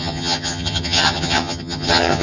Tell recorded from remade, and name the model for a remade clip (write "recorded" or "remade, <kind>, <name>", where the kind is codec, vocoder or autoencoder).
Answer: remade, vocoder, HiFi-GAN